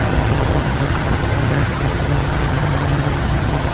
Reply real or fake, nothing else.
fake